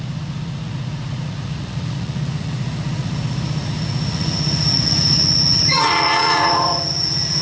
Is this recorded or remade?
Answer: remade